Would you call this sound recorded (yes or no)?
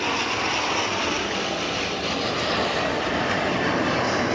yes